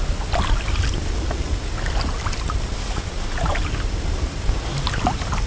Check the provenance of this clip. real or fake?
real